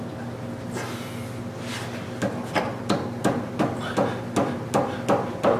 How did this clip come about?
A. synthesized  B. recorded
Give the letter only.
B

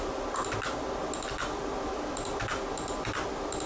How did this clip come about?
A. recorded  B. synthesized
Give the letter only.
A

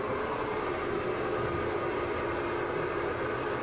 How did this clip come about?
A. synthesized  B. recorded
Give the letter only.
B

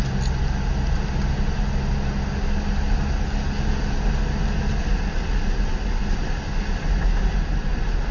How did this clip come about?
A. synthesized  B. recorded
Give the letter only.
B